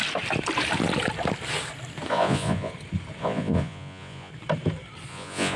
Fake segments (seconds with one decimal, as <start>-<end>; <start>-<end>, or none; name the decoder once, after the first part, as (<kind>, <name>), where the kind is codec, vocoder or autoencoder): 2.1-2.7 (vocoder, Vocos); 3.2-4.3; 5.1-5.6